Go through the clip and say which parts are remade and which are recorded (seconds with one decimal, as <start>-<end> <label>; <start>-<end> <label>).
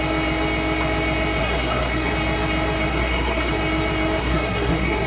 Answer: 0.0-1.4 recorded; 1.4-2.1 remade; 2.1-2.9 recorded; 2.9-3.5 remade; 3.5-4.2 recorded; 4.2-5.1 remade